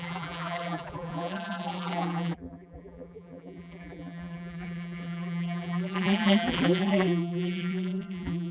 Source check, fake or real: fake